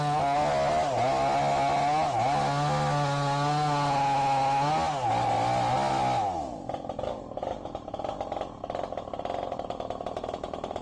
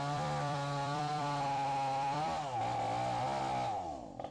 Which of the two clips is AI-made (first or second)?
second